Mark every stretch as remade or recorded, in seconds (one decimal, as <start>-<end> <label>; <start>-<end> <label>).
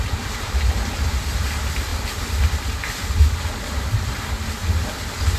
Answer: 0.0-5.4 recorded